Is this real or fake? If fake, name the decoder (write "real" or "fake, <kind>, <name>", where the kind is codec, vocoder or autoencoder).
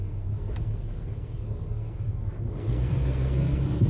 fake, codec, SNAC